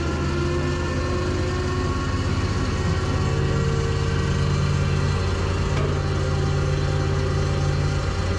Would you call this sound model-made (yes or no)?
no